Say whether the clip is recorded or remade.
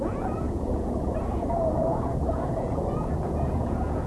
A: remade